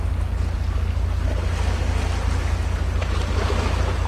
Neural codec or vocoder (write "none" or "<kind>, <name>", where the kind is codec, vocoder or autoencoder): none